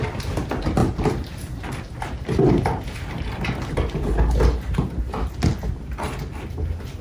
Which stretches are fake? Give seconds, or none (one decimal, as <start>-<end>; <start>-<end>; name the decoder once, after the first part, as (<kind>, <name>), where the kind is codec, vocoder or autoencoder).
0.8-5.0 (vocoder, BigVGAN v2)